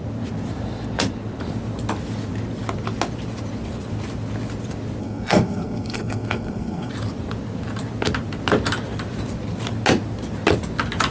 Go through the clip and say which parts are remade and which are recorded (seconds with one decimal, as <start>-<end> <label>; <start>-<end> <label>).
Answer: 0.0-5.0 recorded; 5.0-6.9 remade; 6.9-11.1 recorded